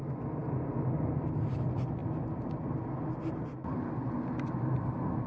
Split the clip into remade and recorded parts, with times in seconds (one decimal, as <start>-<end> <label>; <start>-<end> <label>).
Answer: 0.0-5.3 recorded